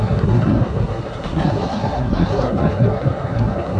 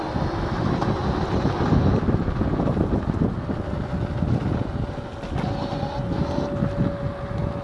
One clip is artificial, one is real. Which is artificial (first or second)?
first